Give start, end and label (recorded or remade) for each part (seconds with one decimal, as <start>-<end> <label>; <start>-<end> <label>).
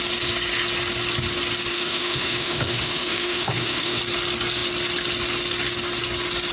0.0-1.7 recorded; 1.7-4.0 remade; 4.0-6.5 recorded